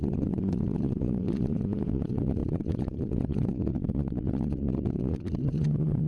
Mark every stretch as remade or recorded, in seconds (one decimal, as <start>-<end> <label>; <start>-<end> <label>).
0.0-6.1 remade